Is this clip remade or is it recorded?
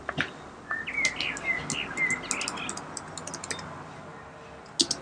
recorded